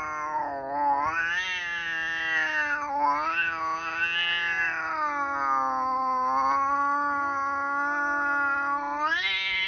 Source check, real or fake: real